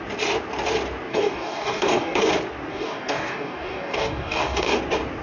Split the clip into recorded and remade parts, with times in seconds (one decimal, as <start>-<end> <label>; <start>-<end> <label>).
0.0-1.1 recorded; 1.1-2.3 remade; 2.3-2.7 recorded; 2.7-4.8 remade; 4.8-5.2 recorded